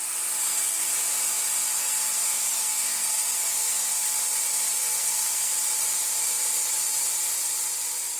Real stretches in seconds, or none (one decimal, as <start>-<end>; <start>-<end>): 0.0-0.4; 0.9-1.8; 3.9-4.8; 5.5-8.2